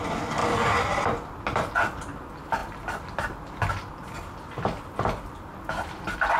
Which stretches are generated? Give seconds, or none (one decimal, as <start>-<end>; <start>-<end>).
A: 0.0-0.4; 1.4-6.4